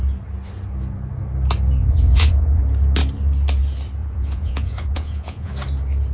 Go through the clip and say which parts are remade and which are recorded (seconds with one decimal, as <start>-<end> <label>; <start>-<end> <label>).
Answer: 0.0-1.8 recorded; 1.8-2.6 remade; 2.6-4.0 recorded; 4.0-5.5 remade; 5.5-6.1 recorded

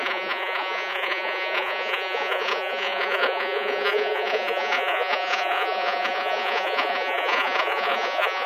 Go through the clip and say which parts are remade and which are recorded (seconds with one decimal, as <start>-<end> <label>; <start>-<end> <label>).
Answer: 0.0-8.5 remade

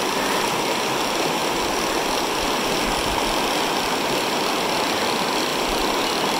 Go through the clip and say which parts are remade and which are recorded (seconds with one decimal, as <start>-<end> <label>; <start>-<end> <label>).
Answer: 0.0-6.4 recorded

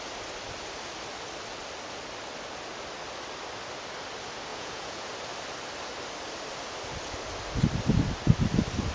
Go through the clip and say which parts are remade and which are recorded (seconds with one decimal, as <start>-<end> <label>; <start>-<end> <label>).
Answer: 0.0-4.5 recorded; 4.5-5.1 remade; 5.1-8.9 recorded

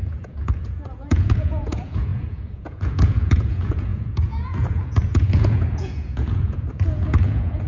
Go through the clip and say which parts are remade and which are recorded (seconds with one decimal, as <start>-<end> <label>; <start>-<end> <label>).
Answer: 0.0-7.7 remade